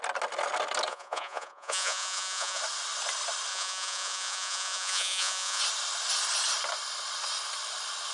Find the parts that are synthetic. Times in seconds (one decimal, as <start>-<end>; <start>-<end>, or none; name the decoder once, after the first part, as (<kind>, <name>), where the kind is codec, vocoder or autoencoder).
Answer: 0.9-2.6 (vocoder, Vocos); 3.5-5.6